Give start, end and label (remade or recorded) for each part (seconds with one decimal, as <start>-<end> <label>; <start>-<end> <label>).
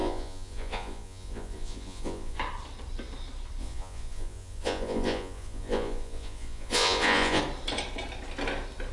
0.0-2.4 remade; 2.4-3.6 recorded; 3.6-7.4 remade; 7.4-8.9 recorded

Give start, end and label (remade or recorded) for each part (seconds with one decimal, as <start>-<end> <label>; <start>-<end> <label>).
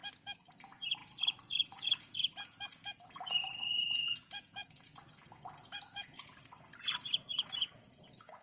0.0-0.6 recorded; 0.6-8.4 remade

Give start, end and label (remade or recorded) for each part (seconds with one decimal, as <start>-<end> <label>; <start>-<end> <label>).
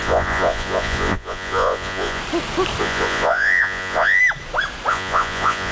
0.0-2.2 remade; 2.2-2.8 recorded; 2.8-4.2 remade; 4.2-4.9 recorded; 4.9-5.7 remade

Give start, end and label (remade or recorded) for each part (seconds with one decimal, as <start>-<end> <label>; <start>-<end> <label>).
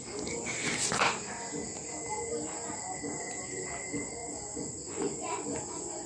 0.0-4.2 recorded; 4.2-6.1 remade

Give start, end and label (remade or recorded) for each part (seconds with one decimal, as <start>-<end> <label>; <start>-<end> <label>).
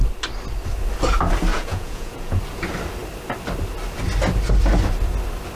0.0-1.5 recorded; 1.5-2.4 remade; 2.4-5.6 recorded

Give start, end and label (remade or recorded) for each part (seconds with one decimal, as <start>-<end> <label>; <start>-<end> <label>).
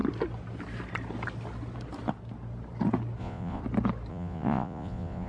0.0-3.2 recorded; 3.2-3.6 remade; 3.6-4.1 recorded; 4.1-5.3 remade